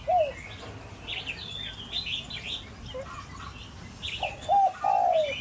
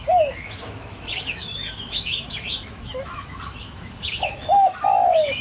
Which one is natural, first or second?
first